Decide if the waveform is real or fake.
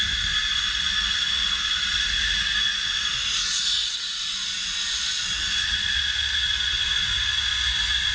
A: real